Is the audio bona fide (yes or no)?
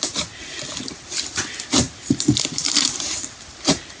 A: no